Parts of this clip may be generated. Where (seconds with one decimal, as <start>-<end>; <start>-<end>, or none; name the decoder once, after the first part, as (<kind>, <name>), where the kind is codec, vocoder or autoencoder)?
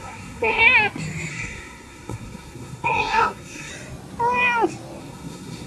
0.0-0.6 (codec, SNAC); 1.3-3.7; 5.0-5.7